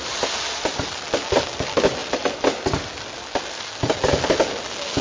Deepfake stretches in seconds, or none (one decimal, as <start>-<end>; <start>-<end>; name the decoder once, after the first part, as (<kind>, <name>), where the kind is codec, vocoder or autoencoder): none